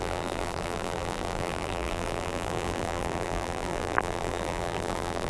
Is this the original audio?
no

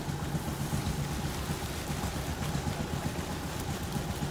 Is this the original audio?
yes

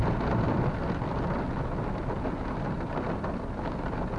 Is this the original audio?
yes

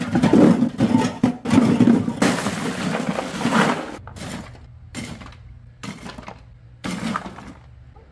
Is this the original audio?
yes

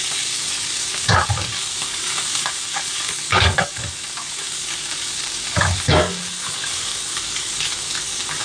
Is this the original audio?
no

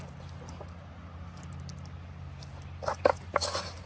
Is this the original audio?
yes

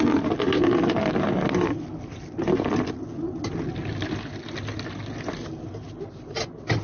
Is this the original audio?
yes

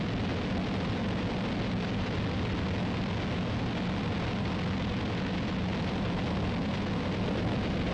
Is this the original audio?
yes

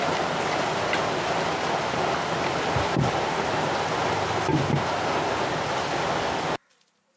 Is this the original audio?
no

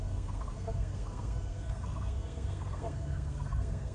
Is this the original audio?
no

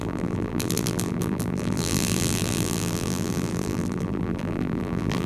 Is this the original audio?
no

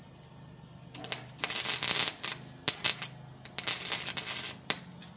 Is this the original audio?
yes